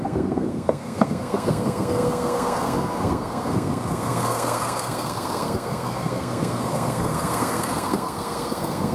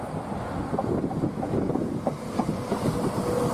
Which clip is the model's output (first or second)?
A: first